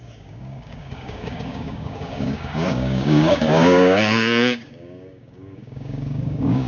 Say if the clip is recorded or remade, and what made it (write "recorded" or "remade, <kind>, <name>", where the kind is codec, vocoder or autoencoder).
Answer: remade, codec, DAC